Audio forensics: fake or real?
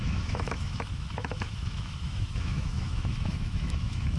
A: fake